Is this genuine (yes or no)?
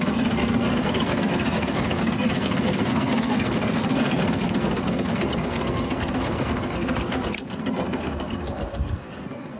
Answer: no